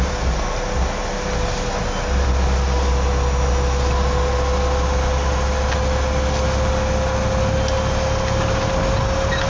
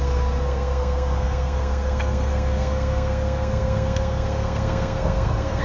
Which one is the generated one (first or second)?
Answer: second